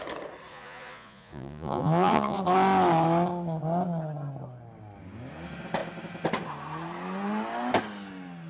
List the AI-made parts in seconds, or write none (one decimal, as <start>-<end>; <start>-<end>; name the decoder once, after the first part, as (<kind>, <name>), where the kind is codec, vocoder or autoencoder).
0.5-2.4 (vocoder, Vocos)